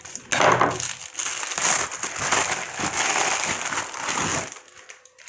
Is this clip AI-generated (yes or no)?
no